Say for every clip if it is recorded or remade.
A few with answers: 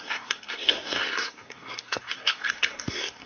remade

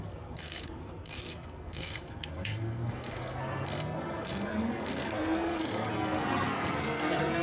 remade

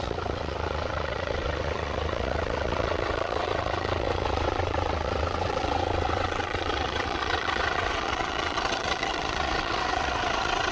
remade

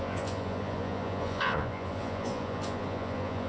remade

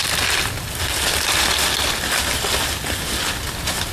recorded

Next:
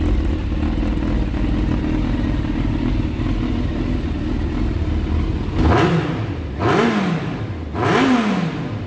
recorded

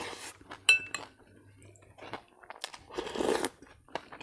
recorded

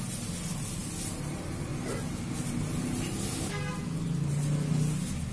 recorded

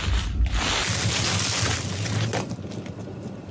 recorded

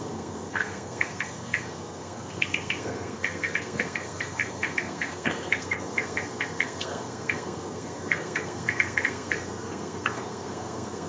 remade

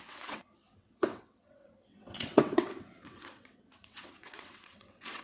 remade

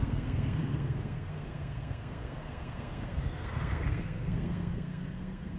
remade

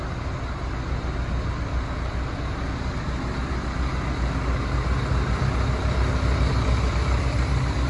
recorded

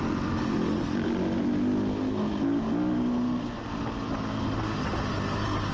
recorded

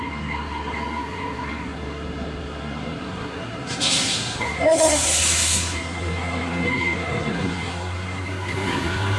remade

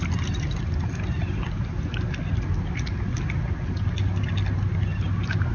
recorded